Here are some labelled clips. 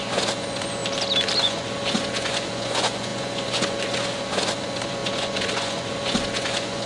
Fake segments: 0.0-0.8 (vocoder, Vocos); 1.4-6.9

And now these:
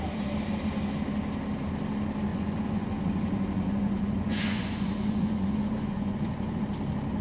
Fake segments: 2.3-6.6 (vocoder, Vocos)

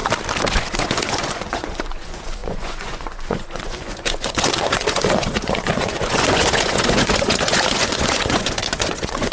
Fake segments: 0.5-9.3 (vocoder, Vocos)

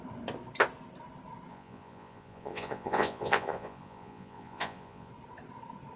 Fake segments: 1.5-5.1 (vocoder, Vocos)

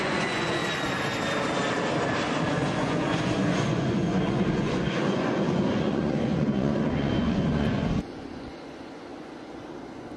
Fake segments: 0.0-0.6 (vocoder, Vocos); 2.5-10.2

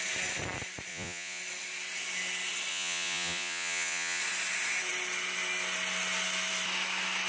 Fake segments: 0.9-1.4 (vocoder, Vocos); 2.7-4.2

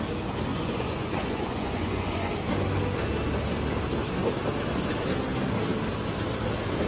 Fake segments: 0.5-2.3 (vocoder, Vocos)